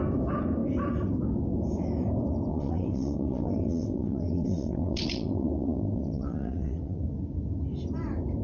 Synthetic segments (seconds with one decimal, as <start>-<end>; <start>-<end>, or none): 2.5-7.0